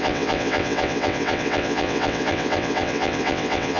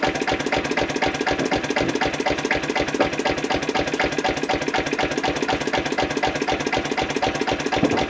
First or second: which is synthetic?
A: first